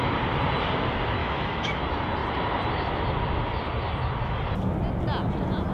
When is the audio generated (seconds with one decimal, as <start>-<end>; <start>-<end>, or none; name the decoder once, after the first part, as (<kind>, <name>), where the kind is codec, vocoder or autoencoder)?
1.2-1.8 (autoencoder, DAC-VAE)